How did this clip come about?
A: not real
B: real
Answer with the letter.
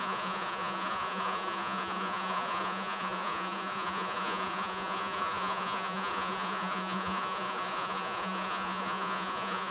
A